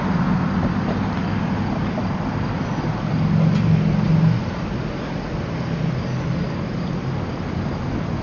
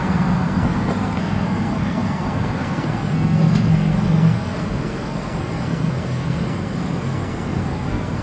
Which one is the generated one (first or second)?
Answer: second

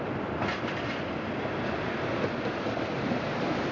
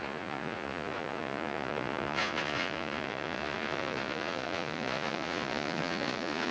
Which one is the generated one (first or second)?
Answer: second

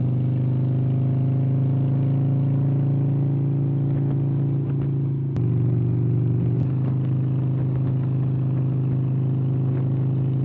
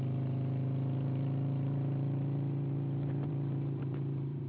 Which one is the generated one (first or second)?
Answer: second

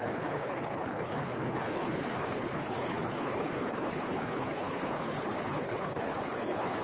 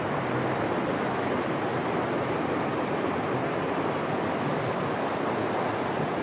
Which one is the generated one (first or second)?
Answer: first